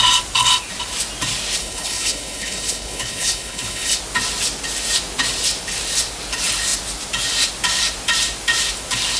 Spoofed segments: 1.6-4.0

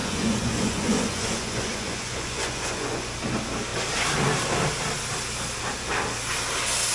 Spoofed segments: 0.0-3.1

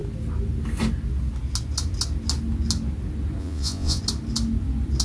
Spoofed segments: 3.4-4.0

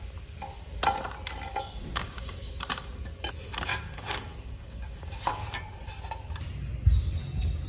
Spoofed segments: 1.5-2.4; 3.7-5.6

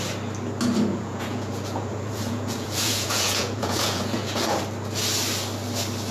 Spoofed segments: 0.9-4.6